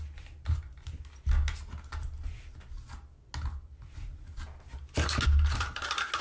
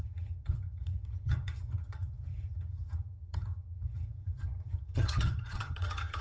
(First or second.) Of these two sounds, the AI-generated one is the second